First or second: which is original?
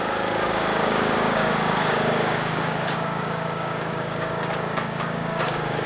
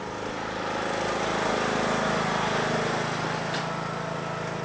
second